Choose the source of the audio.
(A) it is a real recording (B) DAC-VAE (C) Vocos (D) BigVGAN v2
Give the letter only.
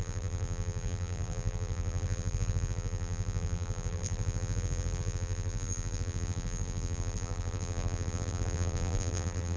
D